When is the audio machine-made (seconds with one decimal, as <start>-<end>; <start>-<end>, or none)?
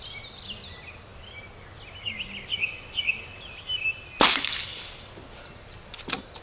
none